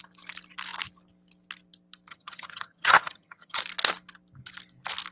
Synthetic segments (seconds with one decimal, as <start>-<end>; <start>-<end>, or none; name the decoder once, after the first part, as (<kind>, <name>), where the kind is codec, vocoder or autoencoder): 2.1-3.6 (vocoder, HiFi-GAN)

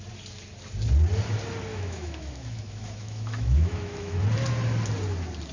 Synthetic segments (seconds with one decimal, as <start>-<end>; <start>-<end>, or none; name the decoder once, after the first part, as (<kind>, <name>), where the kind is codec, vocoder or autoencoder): 1.7-4.2 (autoencoder, DAC-VAE)

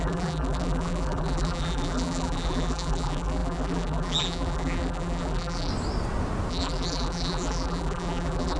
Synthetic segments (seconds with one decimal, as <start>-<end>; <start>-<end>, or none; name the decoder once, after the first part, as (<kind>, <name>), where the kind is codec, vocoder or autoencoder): 0.0-5.7 (vocoder, BigVGAN v2); 6.5-8.6

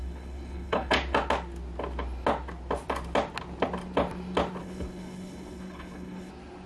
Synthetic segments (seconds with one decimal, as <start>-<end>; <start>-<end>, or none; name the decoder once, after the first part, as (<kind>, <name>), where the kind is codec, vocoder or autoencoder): 0.0-0.9 (codec, HILCodec); 4.6-6.3

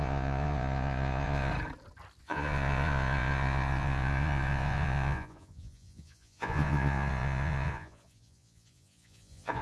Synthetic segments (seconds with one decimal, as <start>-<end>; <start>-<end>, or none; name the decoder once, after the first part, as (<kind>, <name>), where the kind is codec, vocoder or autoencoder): 0.0-1.5 (vocoder, Vocos); 2.2-9.6

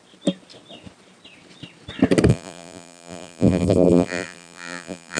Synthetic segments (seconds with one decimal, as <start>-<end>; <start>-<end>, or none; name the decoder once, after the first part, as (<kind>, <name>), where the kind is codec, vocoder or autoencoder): 2.3-5.2 (vocoder, BigVGAN v2)

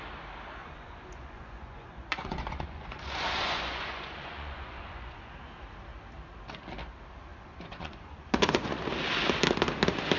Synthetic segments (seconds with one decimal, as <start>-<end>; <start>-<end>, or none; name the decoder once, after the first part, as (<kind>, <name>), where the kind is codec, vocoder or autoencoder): 0.6-5.3 (vocoder, Vocos); 7.3-8.8

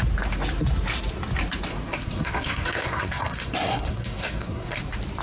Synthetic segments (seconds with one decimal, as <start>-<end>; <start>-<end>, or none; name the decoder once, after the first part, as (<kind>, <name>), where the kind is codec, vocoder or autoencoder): 1.7-4.8 (codec, SNAC)